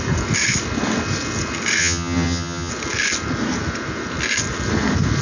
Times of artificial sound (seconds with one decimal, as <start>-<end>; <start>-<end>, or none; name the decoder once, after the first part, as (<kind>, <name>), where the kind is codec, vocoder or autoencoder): 1.8-2.7 (vocoder, HiFi-GAN)